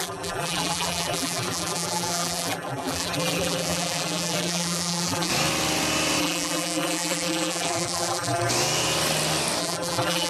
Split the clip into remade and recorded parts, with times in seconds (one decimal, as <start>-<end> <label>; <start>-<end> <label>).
0.0-5.3 remade; 5.3-6.2 recorded; 6.2-8.5 remade; 8.5-9.6 recorded; 9.6-10.3 remade